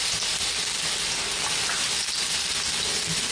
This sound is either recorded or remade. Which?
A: recorded